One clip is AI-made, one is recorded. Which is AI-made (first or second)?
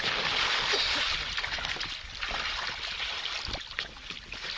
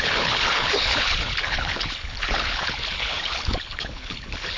second